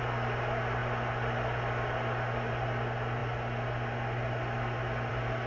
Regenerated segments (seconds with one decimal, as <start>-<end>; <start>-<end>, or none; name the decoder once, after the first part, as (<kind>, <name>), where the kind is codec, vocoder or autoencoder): 0.8-2.5 (vocoder, BigVGAN v2)